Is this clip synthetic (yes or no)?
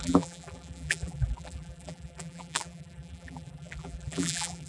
yes